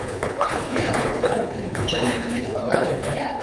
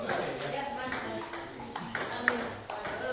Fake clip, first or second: first